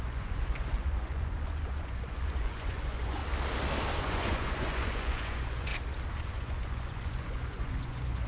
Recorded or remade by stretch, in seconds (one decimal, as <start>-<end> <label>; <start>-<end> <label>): 0.0-3.2 remade; 3.2-4.0 recorded; 4.0-5.7 remade; 5.7-6.2 recorded; 6.2-8.3 remade